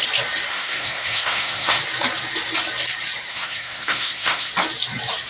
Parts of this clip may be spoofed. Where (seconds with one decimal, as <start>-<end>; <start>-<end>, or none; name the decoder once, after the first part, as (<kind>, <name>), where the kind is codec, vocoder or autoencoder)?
0.5-1.8 (codec, SNAC); 3.3-4.5